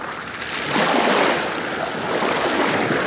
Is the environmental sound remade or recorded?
recorded